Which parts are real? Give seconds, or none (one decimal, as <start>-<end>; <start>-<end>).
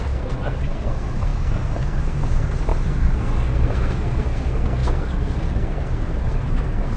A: none